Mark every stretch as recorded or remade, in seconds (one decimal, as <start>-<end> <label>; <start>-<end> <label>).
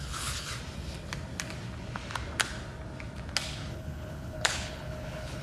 0.0-0.5 remade; 0.5-3.7 recorded; 3.7-5.4 remade